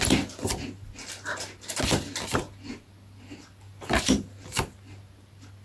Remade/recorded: recorded